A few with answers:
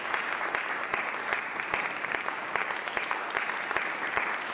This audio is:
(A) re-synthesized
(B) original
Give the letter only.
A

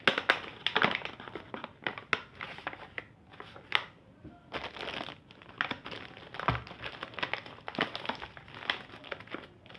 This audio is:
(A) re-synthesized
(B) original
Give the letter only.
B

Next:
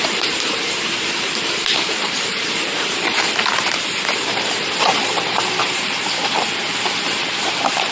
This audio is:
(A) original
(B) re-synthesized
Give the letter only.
B